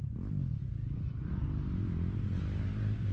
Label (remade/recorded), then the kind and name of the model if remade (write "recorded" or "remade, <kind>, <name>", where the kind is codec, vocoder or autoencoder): recorded